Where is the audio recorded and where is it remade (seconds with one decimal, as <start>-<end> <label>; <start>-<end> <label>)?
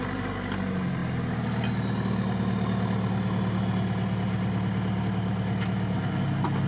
0.0-6.7 recorded